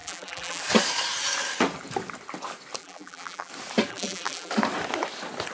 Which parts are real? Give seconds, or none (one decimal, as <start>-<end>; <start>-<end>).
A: 0.6-2.8; 3.5-3.9; 4.5-5.5